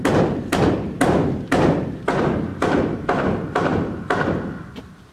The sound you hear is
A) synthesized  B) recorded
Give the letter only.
B